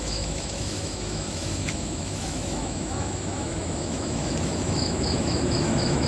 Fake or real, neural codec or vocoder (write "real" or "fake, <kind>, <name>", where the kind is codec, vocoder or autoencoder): fake, autoencoder, DAC-VAE